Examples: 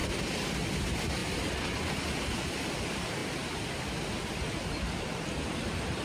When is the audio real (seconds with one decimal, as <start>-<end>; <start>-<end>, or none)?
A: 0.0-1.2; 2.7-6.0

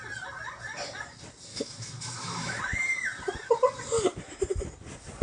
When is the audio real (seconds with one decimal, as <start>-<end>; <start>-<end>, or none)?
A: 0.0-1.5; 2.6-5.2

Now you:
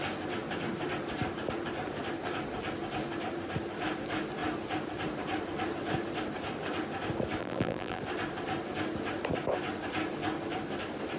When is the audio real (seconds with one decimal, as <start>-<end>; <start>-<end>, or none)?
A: 0.0-7.4; 8.0-11.2

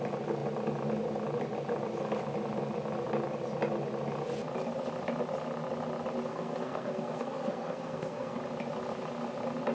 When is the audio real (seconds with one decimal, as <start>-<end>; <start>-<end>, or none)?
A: 0.0-6.3; 8.4-9.7

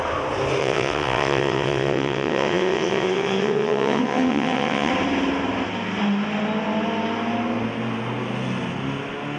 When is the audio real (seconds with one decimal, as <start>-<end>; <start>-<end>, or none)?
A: 0.0-0.6; 4.9-9.4

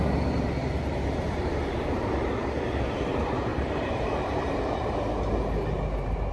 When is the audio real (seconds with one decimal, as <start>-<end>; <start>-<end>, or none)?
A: 0.0-0.6; 2.1-3.5; 4.6-6.3